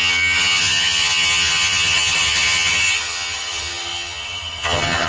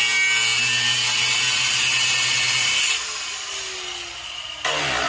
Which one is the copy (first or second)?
first